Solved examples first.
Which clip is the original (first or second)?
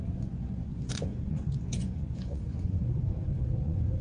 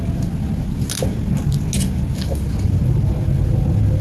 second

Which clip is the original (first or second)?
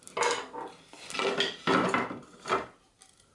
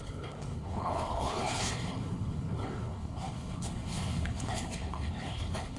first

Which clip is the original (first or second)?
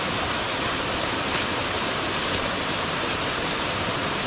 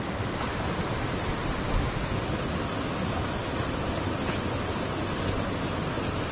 second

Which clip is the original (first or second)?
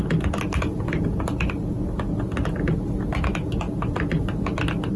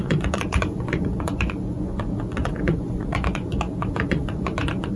first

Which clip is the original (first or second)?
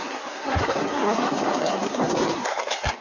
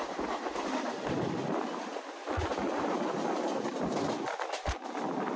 second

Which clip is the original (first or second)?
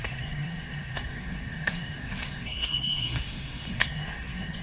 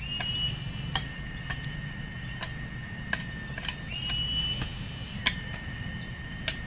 second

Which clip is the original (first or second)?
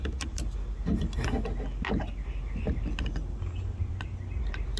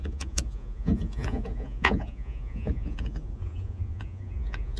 first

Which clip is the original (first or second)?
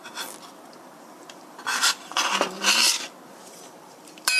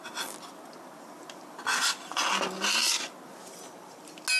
second